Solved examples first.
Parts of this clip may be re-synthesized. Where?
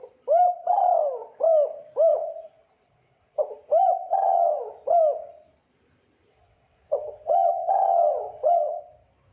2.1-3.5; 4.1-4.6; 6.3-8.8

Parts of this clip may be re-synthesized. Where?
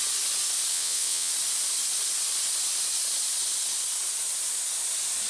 0.7-1.3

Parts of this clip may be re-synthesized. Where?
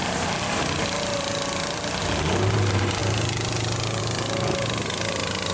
none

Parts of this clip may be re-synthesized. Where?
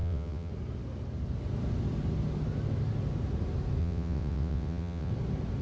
0.0-0.5; 3.8-5.1